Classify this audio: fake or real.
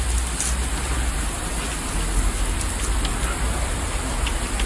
real